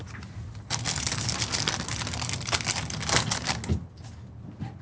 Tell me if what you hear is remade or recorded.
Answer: recorded